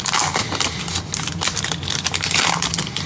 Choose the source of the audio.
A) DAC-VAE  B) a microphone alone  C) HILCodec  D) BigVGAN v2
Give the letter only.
B